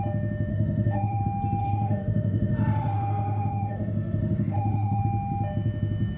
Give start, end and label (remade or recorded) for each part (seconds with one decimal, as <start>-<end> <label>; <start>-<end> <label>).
0.0-0.5 recorded; 0.5-1.2 remade; 1.2-1.6 recorded; 1.6-5.0 remade; 5.0-6.2 recorded